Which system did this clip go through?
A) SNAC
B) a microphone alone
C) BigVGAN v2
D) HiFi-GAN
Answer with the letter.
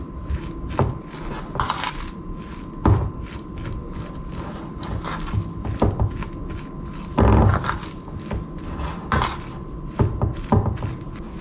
B